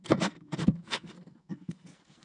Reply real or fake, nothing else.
fake